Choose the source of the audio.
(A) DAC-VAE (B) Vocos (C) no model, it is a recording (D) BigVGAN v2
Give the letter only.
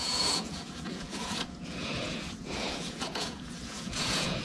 B